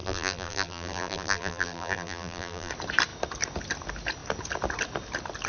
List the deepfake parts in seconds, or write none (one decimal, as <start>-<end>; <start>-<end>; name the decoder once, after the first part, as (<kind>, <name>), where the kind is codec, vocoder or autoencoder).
0.0-2.7 (vocoder, BigVGAN v2)